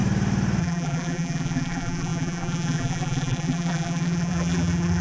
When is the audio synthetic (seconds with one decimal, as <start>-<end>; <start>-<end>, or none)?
0.6-5.0